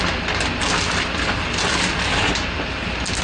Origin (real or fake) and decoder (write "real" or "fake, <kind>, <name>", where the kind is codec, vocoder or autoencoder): real